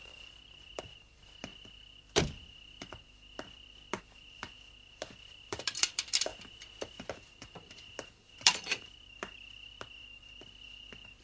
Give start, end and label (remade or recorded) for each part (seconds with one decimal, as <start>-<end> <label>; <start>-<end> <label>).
0.0-6.3 remade; 6.3-7.1 recorded; 7.1-11.2 remade